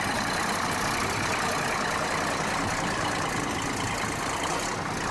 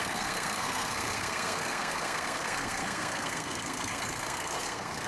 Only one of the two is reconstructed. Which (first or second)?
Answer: second